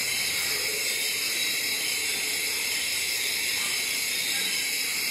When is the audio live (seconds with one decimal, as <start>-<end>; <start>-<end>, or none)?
3.1-5.1